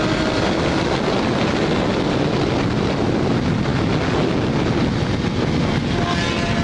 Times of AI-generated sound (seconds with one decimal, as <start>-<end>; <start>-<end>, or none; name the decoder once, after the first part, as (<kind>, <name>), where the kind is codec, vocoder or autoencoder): none